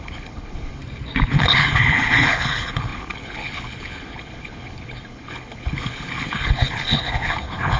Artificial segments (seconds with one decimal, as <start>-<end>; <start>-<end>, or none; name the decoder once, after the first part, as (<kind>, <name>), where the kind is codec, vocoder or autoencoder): 0.0-0.8 (codec, HILCodec); 1.3-7.8